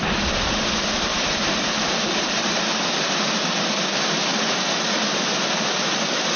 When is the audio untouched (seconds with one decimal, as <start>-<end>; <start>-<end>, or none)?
0.0-1.1; 2.6-6.4